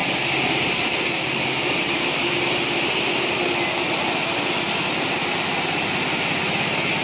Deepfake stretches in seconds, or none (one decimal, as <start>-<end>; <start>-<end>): none